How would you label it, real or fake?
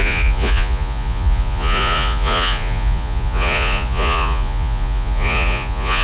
fake